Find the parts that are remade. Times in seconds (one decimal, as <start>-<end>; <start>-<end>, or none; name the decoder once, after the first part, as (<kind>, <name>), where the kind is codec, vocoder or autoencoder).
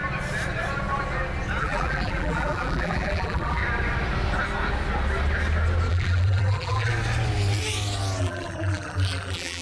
1.6-3.6 (vocoder, BigVGAN v2); 5.9-6.9; 8.2-9.6